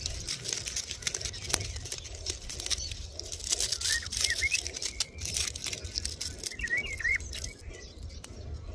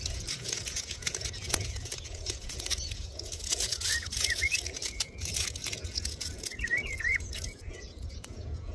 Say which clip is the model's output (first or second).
second